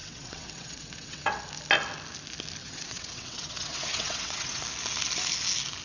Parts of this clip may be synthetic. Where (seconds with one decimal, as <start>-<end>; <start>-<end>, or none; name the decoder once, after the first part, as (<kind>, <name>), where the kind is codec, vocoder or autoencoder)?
0.0-1.4 (vocoder, WaveNeXt); 2.6-4.6